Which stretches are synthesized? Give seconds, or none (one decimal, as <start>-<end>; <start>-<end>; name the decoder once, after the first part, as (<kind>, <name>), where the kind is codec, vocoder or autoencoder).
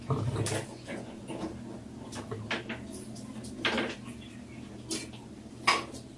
0.7-1.3 (vocoder, Vocos)